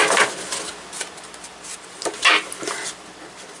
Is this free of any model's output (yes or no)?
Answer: yes